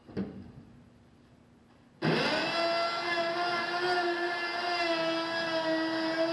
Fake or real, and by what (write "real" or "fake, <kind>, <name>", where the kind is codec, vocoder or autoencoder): real